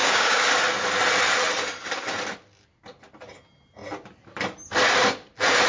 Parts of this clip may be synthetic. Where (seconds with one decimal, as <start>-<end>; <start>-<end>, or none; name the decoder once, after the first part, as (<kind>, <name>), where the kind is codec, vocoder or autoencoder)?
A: 0.0-0.5 (codec, DAC)